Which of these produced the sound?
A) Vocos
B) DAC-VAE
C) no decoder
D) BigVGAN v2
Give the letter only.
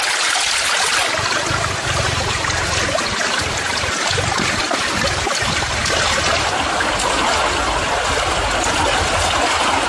C